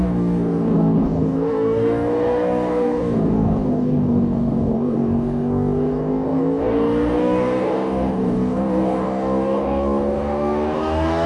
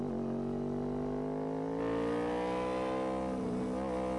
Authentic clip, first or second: second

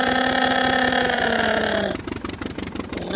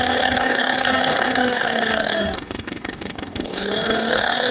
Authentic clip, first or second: first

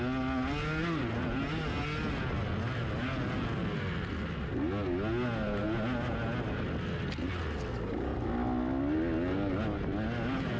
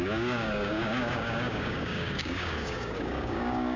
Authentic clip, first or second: first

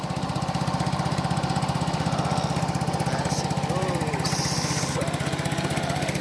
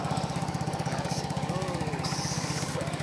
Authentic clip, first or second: first